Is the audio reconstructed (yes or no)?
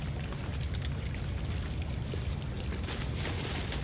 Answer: no